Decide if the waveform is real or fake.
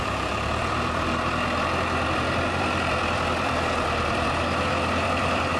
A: fake